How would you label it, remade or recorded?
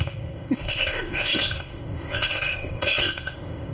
remade